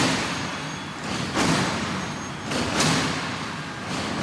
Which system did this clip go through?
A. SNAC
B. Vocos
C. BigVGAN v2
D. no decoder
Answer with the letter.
D